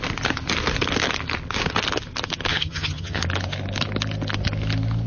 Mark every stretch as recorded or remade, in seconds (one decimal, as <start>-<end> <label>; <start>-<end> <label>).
0.0-2.5 recorded; 2.5-3.2 remade; 3.2-5.1 recorded